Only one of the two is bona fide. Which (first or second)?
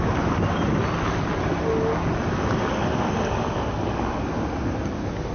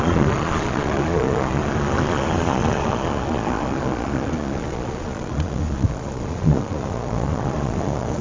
first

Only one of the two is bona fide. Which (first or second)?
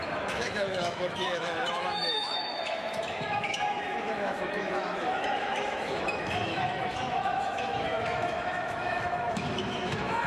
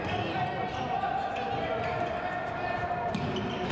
second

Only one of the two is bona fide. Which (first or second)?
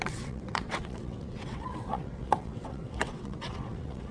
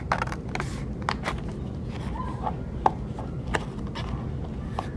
second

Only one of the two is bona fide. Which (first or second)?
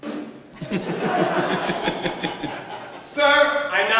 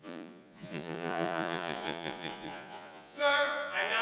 first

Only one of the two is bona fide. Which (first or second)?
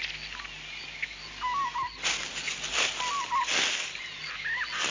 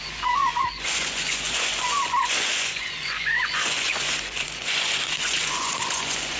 first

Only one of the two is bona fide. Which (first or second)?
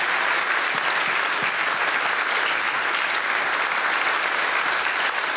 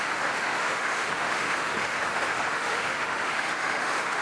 first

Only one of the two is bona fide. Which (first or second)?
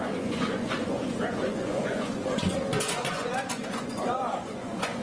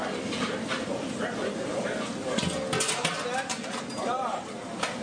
second